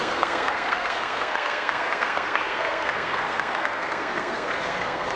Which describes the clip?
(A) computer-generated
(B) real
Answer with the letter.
A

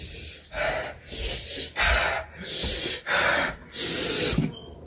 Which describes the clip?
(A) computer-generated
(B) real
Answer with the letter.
B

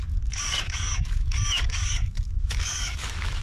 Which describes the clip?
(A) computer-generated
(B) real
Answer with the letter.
A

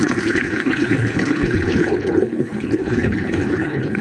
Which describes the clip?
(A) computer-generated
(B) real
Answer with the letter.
A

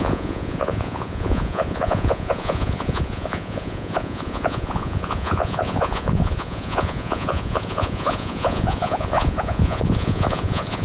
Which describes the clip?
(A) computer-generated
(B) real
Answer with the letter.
A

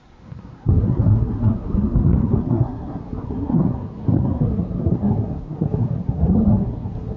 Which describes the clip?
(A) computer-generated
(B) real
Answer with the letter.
A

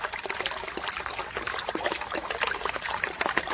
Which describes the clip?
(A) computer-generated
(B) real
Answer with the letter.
B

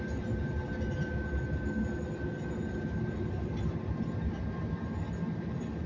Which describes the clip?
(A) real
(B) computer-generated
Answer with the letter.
A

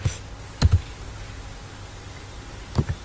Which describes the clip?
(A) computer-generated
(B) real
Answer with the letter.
B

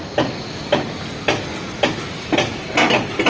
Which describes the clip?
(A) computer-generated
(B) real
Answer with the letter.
B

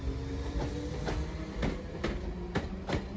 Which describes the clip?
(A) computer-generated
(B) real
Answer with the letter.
B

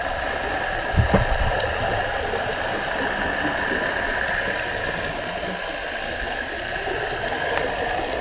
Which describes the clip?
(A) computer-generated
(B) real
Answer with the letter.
B